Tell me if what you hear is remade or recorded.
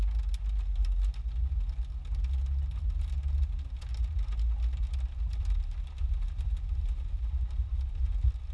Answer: recorded